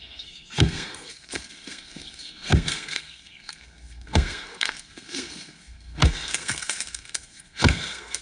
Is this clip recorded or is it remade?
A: remade